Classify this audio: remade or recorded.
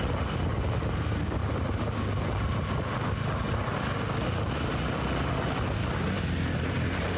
recorded